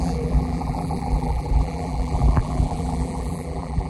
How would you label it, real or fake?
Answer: fake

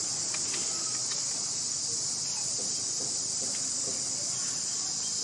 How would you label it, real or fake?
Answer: real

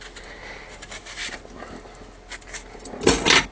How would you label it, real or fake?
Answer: real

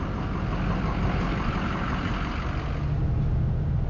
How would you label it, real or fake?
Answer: real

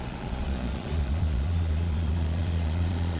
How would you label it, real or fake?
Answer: fake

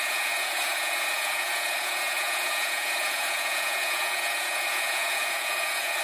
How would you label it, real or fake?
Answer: fake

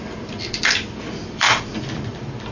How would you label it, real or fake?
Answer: fake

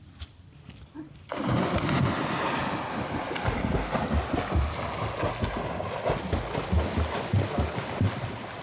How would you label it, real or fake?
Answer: real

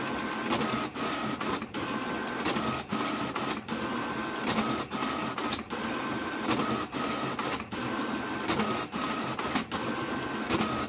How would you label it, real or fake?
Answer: real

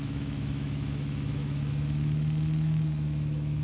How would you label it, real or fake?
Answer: fake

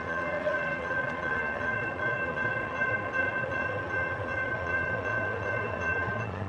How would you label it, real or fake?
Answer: fake